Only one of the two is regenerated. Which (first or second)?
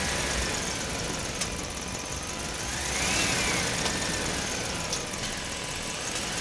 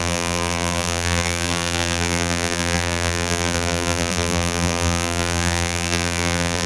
second